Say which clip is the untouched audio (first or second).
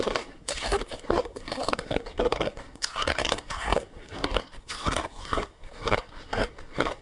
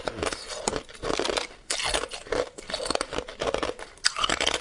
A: second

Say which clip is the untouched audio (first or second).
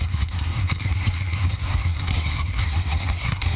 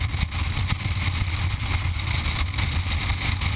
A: second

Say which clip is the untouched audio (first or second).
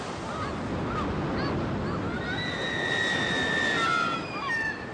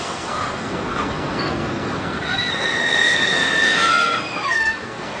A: first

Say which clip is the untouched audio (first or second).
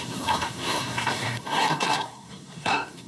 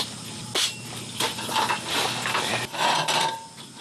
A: second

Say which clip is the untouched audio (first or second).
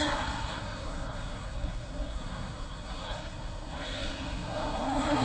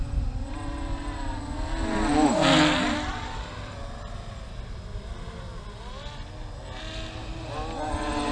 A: second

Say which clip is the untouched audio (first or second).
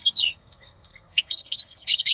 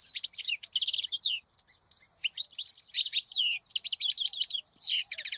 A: second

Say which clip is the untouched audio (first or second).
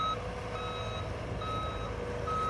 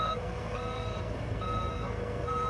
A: first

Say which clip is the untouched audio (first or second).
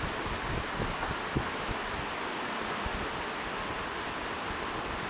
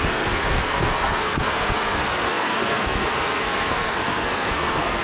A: first